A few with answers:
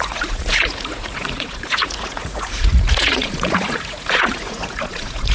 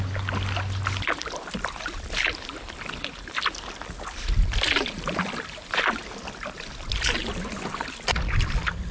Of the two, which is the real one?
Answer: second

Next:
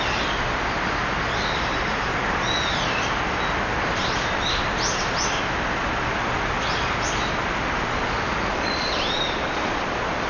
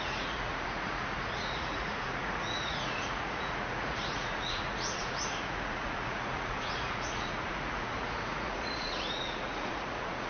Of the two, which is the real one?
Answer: first